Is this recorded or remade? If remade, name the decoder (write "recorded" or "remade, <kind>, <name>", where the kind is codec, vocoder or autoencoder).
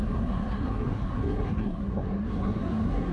remade, codec, SNAC